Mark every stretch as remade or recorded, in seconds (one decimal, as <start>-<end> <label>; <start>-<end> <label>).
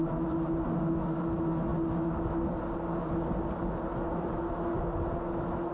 0.0-5.7 recorded